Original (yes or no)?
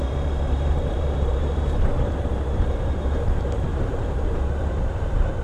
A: no